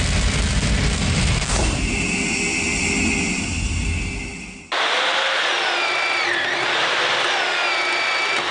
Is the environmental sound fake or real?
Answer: real